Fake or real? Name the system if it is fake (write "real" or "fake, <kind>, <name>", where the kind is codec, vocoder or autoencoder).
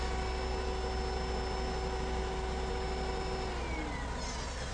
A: real